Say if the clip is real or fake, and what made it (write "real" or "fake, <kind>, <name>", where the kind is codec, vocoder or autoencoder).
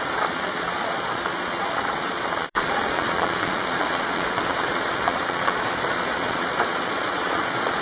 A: fake, vocoder, Vocos